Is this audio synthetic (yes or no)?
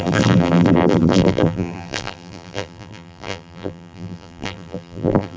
yes